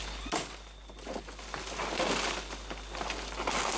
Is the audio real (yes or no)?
yes